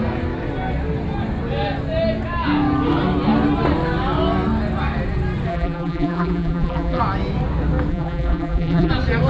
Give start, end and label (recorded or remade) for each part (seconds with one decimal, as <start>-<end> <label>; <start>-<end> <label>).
0.0-5.5 recorded; 5.5-7.0 remade; 7.0-7.9 recorded; 7.9-8.9 remade; 8.9-9.3 recorded